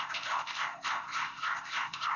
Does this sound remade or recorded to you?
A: remade